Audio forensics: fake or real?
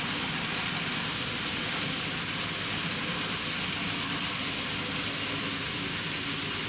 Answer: real